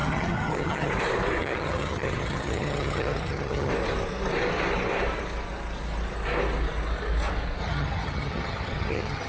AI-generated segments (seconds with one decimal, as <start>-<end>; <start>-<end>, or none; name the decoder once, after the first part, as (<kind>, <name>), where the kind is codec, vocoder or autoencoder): 0.0-0.9 (vocoder, HiFi-GAN); 1.4-3.7; 7.6-9.3